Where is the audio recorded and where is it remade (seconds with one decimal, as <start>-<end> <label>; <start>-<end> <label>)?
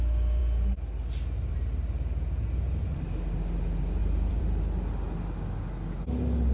0.0-4.0 recorded; 4.0-4.6 remade; 4.6-6.5 recorded